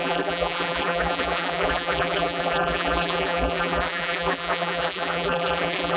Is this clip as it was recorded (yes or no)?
no